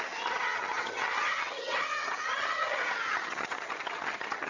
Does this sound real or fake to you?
fake